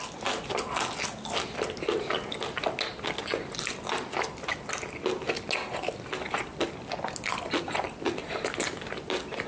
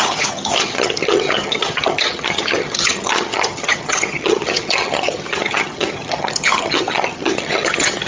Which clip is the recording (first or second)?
first